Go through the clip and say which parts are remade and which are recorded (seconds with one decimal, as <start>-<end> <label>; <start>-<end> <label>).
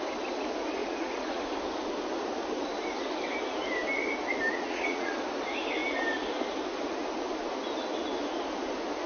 0.0-0.8 recorded; 0.8-1.4 remade; 1.4-4.5 recorded; 4.5-5.1 remade; 5.1-9.1 recorded